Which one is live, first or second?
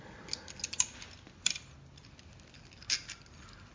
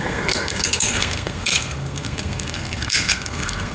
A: first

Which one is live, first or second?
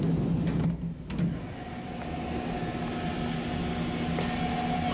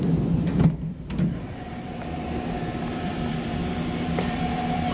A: first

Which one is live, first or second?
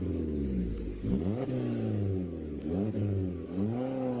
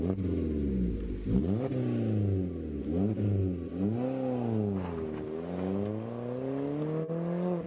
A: second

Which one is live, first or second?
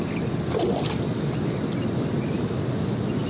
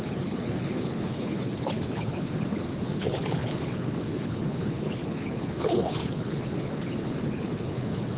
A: first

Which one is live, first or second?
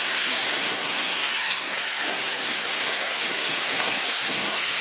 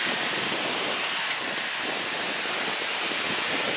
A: second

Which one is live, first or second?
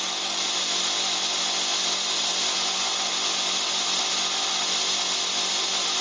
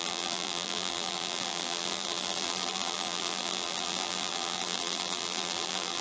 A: first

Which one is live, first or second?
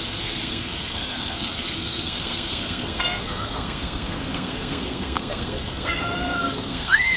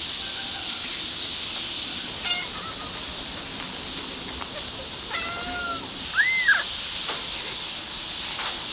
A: second